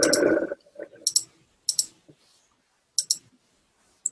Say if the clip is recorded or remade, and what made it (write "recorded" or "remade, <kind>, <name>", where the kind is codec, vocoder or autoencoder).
recorded